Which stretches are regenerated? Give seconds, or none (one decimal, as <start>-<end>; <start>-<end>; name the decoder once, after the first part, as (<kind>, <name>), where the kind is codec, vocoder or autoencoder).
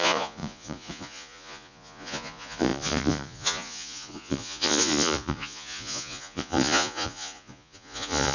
0.0-8.3 (vocoder, Vocos)